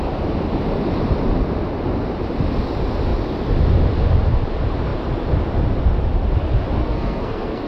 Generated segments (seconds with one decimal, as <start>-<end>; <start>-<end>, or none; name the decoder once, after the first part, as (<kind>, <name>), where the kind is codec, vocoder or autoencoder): 6.8-7.7 (codec, SNAC)